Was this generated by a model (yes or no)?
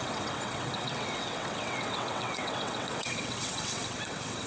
yes